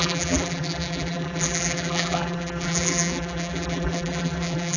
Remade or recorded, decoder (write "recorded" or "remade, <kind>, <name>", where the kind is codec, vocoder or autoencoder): remade, vocoder, BigVGAN v2